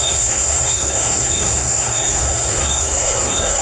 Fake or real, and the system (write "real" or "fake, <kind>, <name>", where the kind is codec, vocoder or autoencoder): fake, codec, SNAC